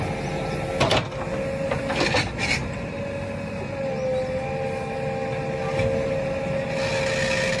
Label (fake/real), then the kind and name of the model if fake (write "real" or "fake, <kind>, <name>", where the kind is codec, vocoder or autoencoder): real